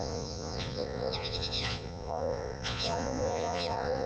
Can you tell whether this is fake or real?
fake